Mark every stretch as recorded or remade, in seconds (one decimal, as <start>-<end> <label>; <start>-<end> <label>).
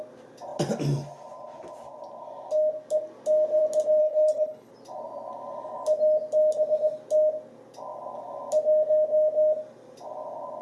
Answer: 0.0-4.0 recorded; 4.0-4.7 remade; 4.7-10.6 recorded